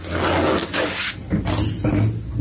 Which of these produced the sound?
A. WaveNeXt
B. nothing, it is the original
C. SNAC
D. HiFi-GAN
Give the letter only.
B